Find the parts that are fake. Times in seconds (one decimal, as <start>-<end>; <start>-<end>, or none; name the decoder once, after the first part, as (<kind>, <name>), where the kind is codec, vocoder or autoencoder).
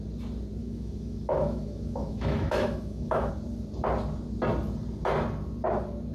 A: 0.6-3.3 (autoencoder, DAC-VAE)